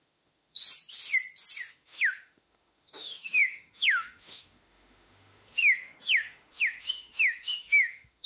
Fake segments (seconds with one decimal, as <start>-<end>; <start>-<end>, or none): 0.0-0.6; 1.7-8.3